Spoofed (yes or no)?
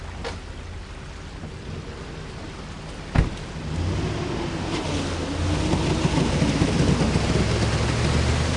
no